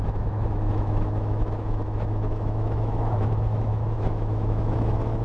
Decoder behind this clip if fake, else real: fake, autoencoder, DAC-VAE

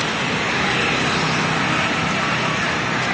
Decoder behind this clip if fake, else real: real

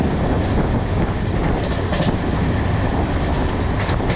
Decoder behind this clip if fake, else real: real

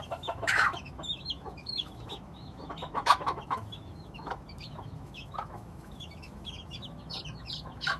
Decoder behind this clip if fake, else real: fake, autoencoder, DAC-VAE